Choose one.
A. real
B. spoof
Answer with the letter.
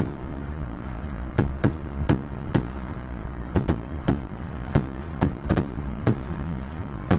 B